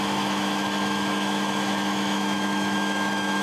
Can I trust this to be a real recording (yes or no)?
no